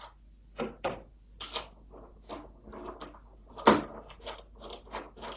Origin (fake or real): real